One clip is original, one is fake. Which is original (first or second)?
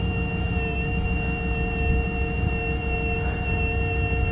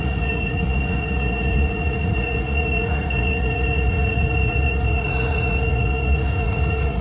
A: first